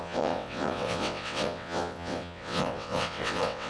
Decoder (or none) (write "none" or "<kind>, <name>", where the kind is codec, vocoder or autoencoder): vocoder, WaveNeXt